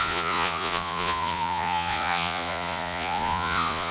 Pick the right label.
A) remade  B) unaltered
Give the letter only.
A